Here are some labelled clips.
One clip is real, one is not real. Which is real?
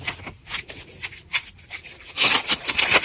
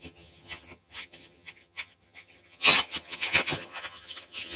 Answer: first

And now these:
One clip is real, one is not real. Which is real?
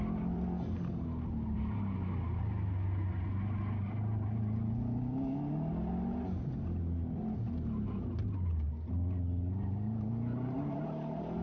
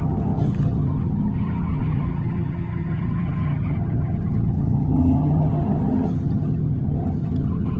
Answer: first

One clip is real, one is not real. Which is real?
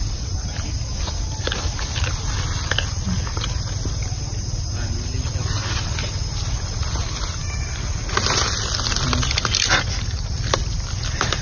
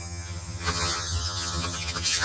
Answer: first